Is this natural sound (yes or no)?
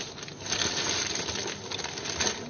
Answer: yes